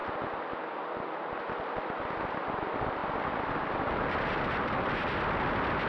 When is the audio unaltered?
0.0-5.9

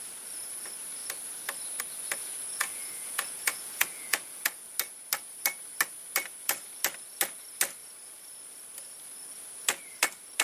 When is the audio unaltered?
0.0-2.2; 4.7-10.4